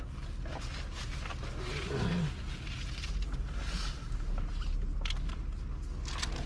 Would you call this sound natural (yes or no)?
yes